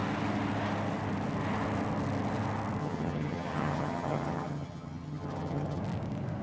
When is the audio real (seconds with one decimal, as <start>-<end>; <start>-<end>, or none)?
0.0-2.8; 5.8-6.4